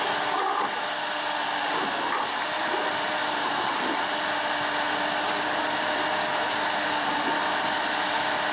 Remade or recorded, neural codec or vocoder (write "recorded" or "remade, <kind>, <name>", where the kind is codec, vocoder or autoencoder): recorded